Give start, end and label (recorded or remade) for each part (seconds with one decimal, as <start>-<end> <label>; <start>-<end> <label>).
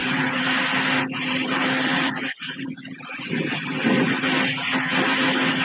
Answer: 0.0-0.6 remade; 0.6-1.2 recorded; 1.2-3.7 remade; 3.7-5.6 recorded